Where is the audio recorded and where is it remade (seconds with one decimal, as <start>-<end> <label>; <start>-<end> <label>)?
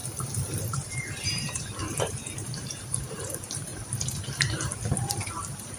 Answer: 0.0-0.6 recorded; 0.6-3.7 remade; 3.7-5.8 recorded